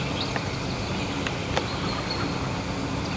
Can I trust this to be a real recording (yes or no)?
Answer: yes